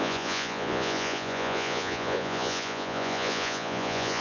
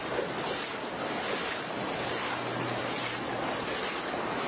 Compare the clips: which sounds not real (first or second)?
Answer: first